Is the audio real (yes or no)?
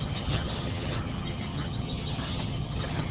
no